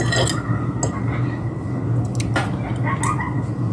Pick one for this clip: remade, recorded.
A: recorded